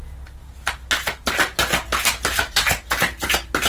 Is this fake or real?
real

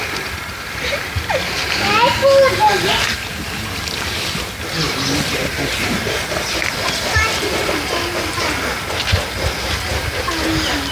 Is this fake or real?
fake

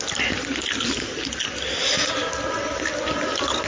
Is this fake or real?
real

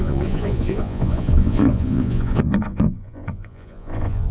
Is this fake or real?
fake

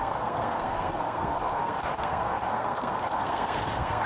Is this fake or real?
fake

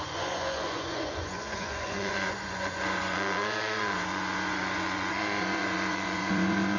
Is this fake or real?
fake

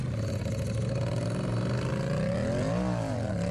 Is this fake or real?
real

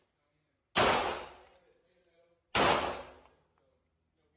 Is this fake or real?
real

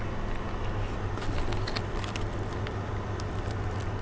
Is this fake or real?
real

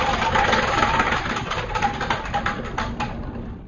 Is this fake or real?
real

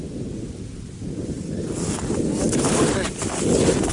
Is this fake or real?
real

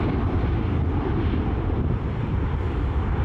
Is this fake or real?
real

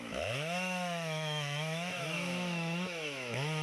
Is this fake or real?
fake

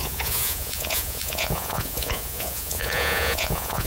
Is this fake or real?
fake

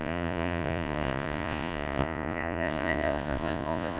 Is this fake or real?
fake